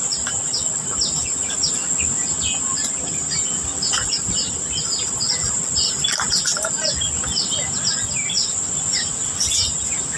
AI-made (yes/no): no